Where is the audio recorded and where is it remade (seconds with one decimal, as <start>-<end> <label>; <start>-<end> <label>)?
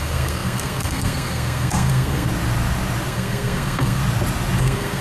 0.0-2.3 remade; 2.3-3.1 recorded; 3.1-4.0 remade; 4.0-4.6 recorded; 4.6-5.0 remade